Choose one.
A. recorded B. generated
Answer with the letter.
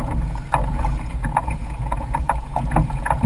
B